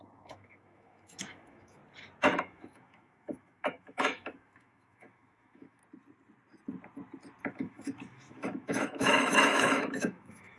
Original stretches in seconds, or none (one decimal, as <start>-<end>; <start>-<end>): 1.8-2.4; 5.8-7.4